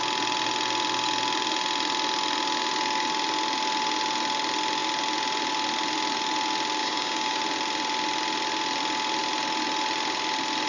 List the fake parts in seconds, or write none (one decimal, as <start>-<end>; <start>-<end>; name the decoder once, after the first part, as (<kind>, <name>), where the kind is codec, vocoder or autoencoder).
6.8-7.4 (codec, DAC)